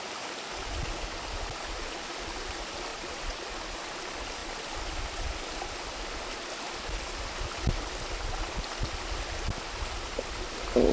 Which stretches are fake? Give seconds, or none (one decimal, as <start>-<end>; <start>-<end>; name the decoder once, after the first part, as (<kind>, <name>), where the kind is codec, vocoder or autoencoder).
2.9-3.5 (vocoder, Vocos)